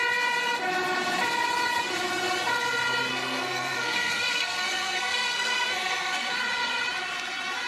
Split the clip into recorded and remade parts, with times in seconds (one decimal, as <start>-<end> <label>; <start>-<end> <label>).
0.0-3.1 recorded; 3.1-6.3 remade; 6.3-7.7 recorded